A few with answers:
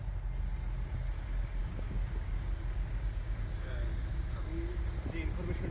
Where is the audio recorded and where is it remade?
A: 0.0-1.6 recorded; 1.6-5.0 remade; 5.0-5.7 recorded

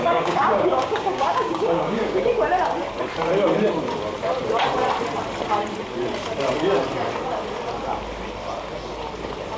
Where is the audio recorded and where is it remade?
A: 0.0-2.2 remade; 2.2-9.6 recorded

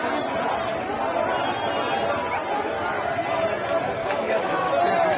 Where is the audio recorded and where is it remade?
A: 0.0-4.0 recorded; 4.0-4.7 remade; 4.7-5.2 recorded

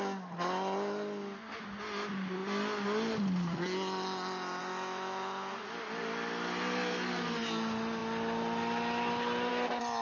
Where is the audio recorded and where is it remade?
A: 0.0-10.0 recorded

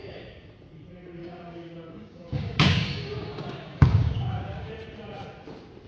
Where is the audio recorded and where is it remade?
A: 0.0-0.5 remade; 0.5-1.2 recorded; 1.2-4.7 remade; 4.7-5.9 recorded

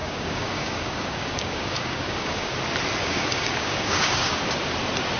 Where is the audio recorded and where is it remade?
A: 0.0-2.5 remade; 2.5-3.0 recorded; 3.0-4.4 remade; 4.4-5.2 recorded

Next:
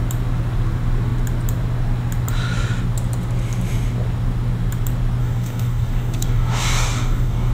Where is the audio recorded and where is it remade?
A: 0.0-5.2 recorded; 5.2-7.5 remade

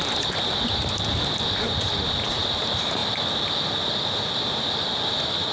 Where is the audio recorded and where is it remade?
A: 0.0-5.5 recorded